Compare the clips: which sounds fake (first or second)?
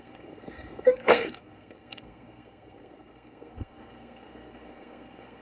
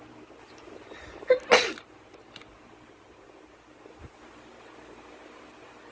first